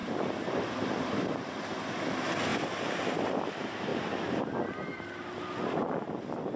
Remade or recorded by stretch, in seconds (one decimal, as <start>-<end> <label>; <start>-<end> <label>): 0.0-1.7 remade; 1.7-2.5 recorded; 2.5-3.5 remade; 3.5-3.9 recorded; 3.9-5.0 remade; 5.0-6.6 recorded